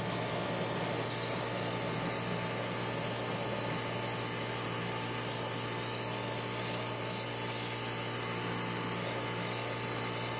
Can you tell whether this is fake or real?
real